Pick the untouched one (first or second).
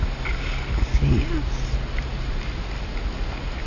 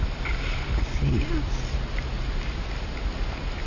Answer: first